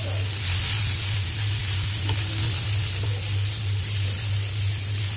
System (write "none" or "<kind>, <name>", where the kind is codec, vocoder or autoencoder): none